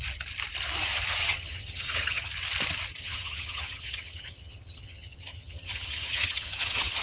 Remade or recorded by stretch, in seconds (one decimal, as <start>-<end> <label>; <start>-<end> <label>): 0.0-1.2 recorded; 1.2-2.3 remade; 2.3-3.0 recorded; 3.0-7.0 remade